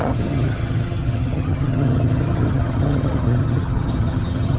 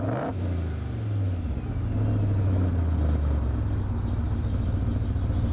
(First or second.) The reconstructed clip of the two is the first